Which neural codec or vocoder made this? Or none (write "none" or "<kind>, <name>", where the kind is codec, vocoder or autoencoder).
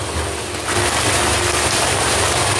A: none